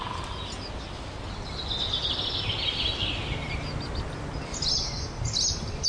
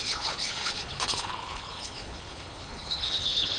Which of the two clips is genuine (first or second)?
first